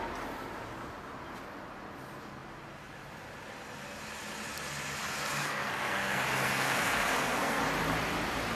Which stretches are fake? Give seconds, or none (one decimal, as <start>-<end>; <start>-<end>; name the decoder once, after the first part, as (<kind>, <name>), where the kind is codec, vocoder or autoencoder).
5.4-7.6 (codec, SNAC)